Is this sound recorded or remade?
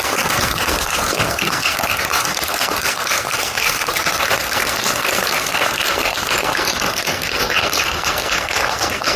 remade